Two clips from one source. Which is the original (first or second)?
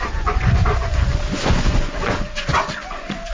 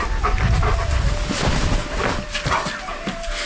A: second